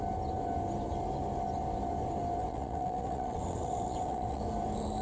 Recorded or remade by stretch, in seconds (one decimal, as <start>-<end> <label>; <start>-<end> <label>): 0.0-2.4 recorded; 2.4-4.4 remade; 4.4-5.0 recorded